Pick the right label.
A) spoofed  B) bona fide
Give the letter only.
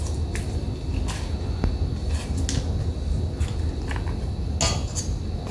B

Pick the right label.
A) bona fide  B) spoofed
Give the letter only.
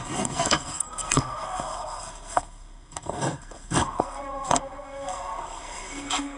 B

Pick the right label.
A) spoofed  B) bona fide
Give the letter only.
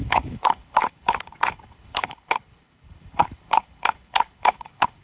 A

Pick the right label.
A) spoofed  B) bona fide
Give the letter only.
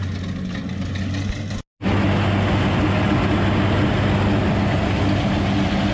B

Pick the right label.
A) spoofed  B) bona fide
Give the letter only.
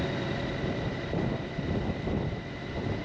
A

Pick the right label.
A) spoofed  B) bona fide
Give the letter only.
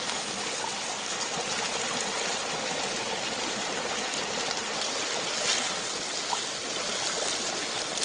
B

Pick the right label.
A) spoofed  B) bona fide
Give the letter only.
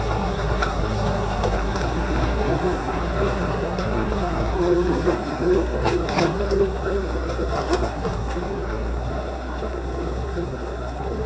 A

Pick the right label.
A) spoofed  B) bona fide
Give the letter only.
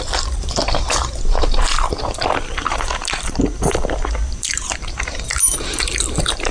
A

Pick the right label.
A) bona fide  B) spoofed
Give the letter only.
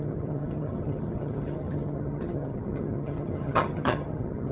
B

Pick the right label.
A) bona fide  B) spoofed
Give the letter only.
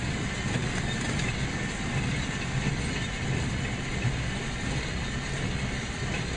A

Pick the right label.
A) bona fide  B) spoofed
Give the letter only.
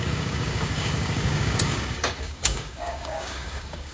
B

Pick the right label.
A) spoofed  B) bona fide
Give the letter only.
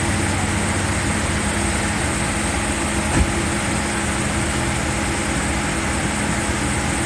B